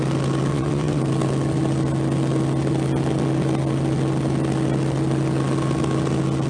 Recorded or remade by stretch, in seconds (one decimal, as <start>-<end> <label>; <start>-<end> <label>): 0.0-0.5 recorded; 0.5-1.0 remade; 1.0-6.5 recorded